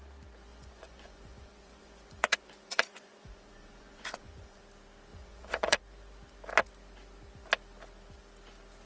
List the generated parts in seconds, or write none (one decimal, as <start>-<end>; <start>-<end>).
0.5-4.6; 5.1-5.8